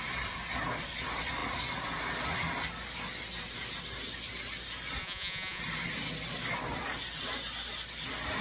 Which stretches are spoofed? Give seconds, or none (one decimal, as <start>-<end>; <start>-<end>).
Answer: 5.0-5.6